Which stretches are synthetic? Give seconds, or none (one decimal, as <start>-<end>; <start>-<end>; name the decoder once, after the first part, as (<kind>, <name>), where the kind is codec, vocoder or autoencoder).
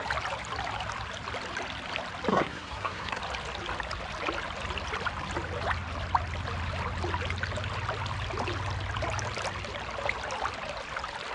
2.3-3.2 (codec, SNAC)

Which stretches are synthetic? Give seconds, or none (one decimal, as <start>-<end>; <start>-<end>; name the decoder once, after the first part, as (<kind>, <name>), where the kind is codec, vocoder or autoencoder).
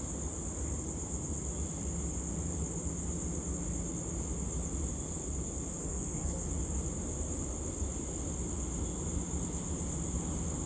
5.8-6.5 (codec, SNAC)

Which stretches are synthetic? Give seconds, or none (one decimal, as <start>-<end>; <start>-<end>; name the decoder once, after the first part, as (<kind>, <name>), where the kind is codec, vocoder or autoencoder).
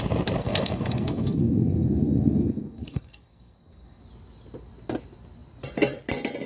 0.4-4.0 (codec, SNAC)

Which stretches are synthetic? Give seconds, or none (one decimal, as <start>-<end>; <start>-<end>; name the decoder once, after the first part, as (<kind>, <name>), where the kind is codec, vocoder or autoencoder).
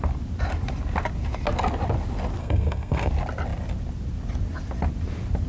2.4-3.1 (codec, SNAC)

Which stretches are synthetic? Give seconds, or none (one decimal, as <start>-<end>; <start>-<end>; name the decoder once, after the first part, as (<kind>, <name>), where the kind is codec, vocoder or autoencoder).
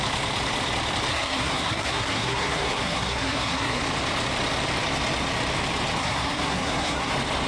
1.1-3.8 (codec, SNAC); 6.0-7.1